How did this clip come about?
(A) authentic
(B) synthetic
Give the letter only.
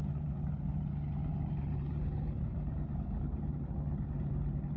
A